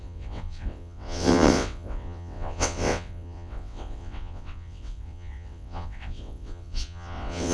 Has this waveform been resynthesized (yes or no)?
yes